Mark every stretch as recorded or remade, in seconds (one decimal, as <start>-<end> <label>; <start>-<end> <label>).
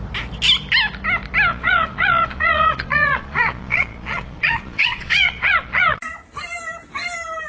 0.0-1.5 recorded; 1.5-6.0 remade; 6.0-7.5 recorded